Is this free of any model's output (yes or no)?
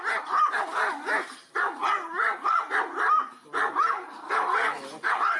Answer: yes